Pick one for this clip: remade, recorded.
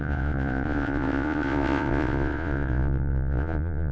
remade